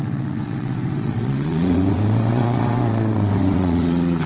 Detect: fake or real fake